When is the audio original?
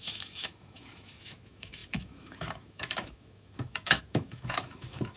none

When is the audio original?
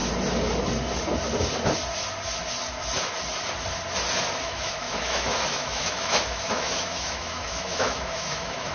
0.0-4.5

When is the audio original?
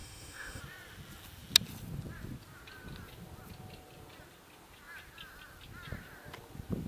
0.6-6.9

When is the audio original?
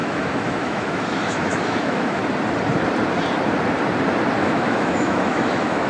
2.2-4.4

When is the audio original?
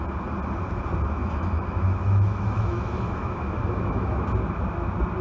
0.0-1.2; 4.3-5.2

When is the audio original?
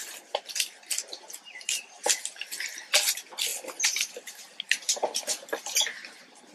0.0-6.5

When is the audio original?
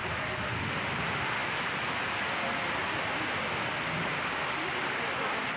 0.0-5.6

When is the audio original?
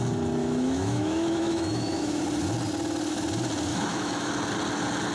0.0-0.4; 2.2-3.7; 4.3-5.1